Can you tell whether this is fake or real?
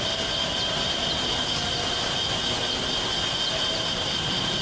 real